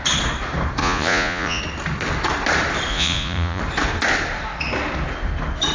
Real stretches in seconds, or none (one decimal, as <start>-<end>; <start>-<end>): 0.0-0.8; 1.6-2.9; 3.6-5.7